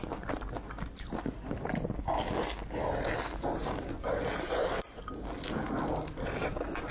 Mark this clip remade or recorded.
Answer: recorded